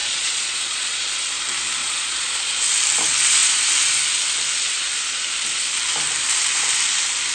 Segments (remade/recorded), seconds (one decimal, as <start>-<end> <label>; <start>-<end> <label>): 0.0-1.1 remade; 1.1-1.8 recorded; 1.8-2.6 remade; 2.6-7.3 recorded